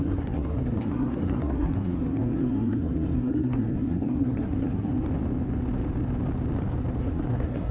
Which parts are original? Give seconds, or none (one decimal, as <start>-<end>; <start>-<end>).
4.9-7.0